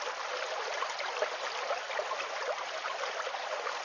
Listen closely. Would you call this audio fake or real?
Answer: real